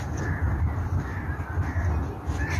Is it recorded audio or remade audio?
recorded